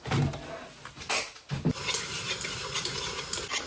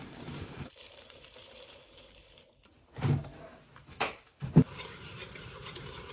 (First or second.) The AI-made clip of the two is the second